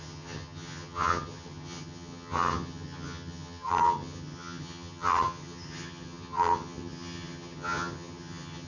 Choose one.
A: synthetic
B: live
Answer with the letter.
A